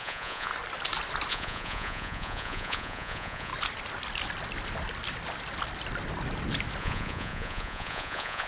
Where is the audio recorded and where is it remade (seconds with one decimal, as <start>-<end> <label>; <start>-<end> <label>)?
0.0-0.5 remade; 0.5-1.3 recorded; 1.3-3.5 remade; 3.5-6.8 recorded; 6.8-8.5 remade